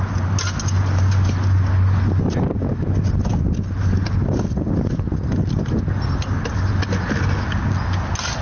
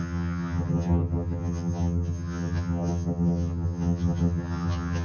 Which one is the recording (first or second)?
first